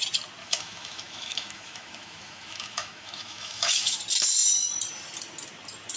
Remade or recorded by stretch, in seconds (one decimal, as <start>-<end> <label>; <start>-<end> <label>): 0.0-0.4 recorded; 0.4-4.0 remade; 4.0-6.0 recorded